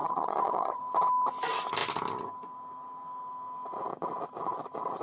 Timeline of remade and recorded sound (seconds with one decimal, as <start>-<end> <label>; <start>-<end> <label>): 0.0-0.8 remade; 0.8-5.0 recorded